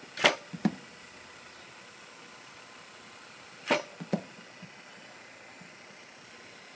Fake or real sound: real